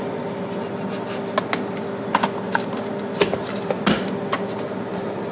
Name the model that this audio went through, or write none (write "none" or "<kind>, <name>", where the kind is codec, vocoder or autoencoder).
none